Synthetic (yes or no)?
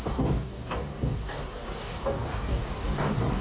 yes